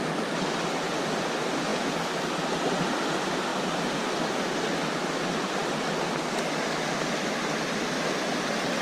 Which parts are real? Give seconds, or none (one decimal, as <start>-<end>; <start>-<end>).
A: 0.0-1.7; 2.8-3.5; 4.3-8.8